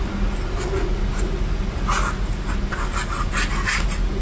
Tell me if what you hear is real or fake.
real